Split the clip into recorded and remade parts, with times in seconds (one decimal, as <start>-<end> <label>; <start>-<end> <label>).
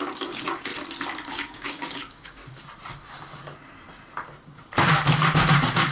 0.0-0.7 remade; 0.7-1.3 recorded; 1.3-2.4 remade; 2.4-5.9 recorded